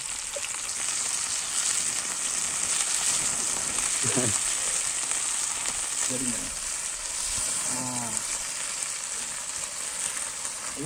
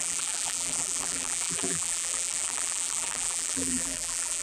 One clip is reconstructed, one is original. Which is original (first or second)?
first